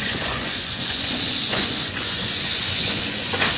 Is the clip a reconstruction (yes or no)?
yes